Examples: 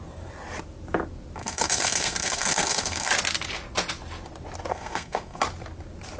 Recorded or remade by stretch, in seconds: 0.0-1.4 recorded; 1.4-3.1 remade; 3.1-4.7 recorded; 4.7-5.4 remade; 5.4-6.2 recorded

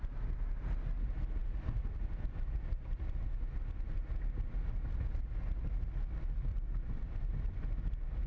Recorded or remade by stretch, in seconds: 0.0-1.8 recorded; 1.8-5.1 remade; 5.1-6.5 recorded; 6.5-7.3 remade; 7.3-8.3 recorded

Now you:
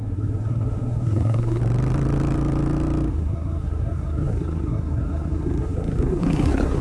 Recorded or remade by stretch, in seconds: 0.0-1.6 remade; 1.6-3.1 recorded; 3.1-6.8 remade